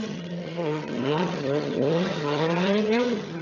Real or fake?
fake